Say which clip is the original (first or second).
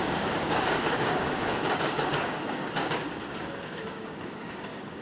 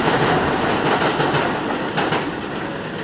second